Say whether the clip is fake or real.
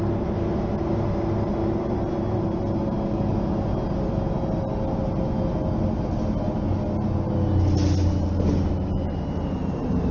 real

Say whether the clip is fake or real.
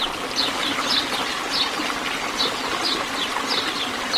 real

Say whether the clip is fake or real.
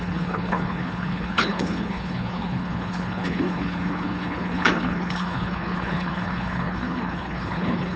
fake